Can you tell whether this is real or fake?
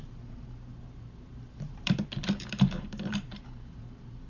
fake